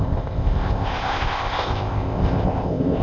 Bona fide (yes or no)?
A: no